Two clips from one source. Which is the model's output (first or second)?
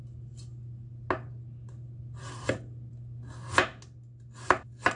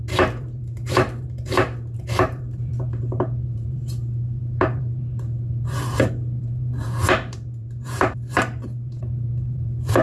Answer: second